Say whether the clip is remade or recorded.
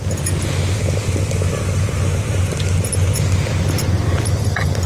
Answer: recorded